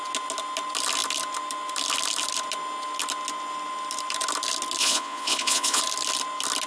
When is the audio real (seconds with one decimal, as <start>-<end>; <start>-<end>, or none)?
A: 0.0-4.8; 5.8-6.7